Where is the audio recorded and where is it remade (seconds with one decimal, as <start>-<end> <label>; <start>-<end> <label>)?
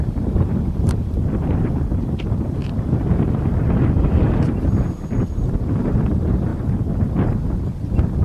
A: 0.0-2.6 remade; 2.6-5.9 recorded; 5.9-6.5 remade; 6.5-7.4 recorded; 7.4-8.2 remade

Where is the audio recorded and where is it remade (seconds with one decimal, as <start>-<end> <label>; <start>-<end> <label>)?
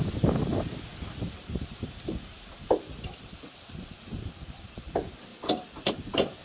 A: 0.0-5.3 remade; 5.3-5.9 recorded; 5.9-6.4 remade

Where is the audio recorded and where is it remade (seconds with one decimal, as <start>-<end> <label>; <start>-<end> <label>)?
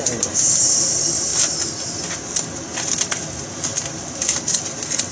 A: 0.0-5.1 recorded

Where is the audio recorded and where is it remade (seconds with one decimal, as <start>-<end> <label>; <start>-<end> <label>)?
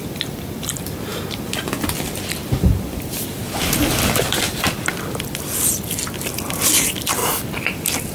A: 0.0-8.1 remade